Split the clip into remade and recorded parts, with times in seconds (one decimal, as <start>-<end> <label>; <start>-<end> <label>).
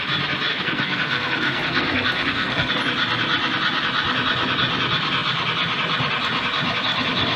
0.0-0.5 recorded; 0.5-2.7 remade; 2.7-7.4 recorded